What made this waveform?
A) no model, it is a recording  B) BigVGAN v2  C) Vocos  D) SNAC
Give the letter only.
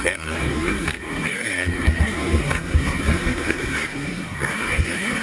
D